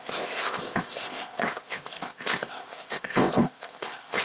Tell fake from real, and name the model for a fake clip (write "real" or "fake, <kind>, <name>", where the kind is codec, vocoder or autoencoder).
fake, codec, ZipCodec